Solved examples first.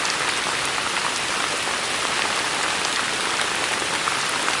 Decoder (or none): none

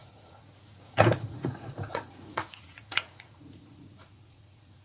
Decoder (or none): vocoder, Vocos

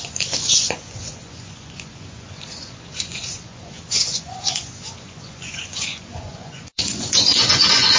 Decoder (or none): vocoder, Vocos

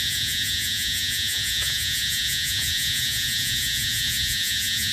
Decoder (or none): vocoder, Vocos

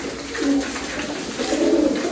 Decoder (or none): none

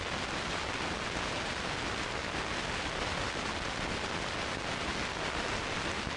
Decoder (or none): none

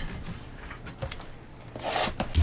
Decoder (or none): none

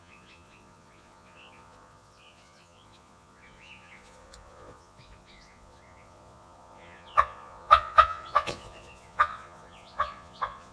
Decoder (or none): vocoder, Vocos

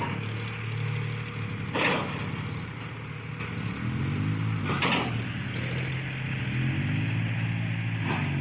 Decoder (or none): none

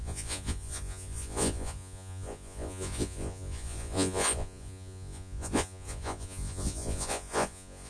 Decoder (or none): vocoder, Vocos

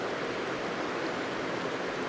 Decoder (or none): none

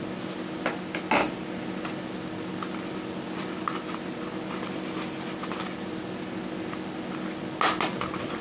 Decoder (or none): none